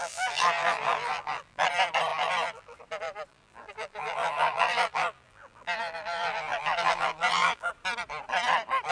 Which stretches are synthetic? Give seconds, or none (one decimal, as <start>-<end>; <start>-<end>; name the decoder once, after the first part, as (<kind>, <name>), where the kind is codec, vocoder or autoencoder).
0.0-1.7 (vocoder, BigVGAN v2); 2.1-2.8; 3.3-7.7